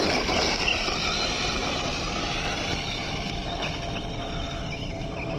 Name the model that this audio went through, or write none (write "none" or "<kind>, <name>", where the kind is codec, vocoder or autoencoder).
none